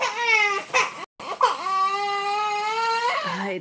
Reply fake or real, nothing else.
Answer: real